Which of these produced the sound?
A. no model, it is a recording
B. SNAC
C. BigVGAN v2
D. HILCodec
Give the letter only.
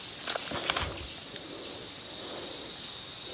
A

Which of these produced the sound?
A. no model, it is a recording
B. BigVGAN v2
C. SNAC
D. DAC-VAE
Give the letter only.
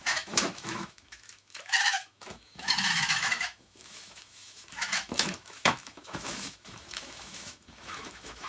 D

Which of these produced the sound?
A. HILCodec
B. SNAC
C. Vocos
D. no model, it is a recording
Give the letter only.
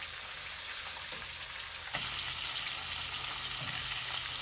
D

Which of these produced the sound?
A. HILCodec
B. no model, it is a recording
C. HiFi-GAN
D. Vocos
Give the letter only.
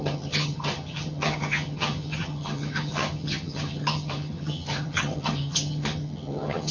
C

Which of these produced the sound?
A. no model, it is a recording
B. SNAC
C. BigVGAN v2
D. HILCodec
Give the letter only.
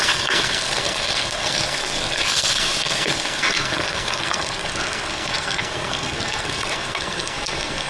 B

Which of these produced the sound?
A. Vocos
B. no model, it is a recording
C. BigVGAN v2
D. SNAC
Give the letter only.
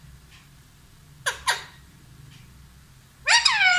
C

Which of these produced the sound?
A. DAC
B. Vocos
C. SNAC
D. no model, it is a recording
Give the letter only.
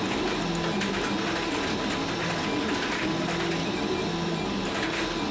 D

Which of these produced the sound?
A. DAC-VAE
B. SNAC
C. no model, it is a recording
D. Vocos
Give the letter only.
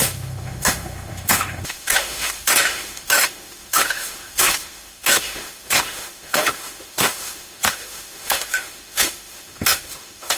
A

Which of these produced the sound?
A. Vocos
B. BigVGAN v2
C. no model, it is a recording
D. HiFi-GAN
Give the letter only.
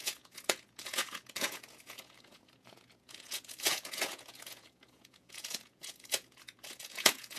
A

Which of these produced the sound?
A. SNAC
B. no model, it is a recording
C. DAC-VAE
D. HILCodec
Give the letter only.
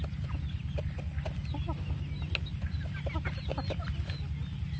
B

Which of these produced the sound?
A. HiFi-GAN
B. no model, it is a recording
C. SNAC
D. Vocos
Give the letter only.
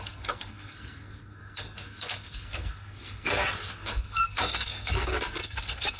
C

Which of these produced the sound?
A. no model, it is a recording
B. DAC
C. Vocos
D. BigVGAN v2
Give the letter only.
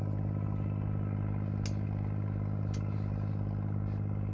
A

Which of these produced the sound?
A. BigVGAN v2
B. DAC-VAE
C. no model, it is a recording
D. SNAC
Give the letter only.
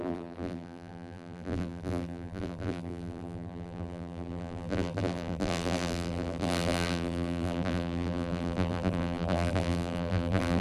A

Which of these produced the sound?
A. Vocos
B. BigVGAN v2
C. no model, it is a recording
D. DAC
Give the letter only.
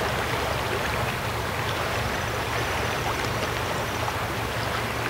C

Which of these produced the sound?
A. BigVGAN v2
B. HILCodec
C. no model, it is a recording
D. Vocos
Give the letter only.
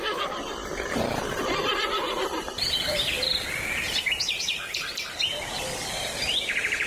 A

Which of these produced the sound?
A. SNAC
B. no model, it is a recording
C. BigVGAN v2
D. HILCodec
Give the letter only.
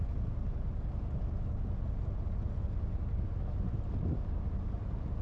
B